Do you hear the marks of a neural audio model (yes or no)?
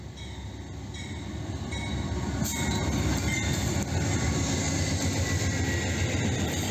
no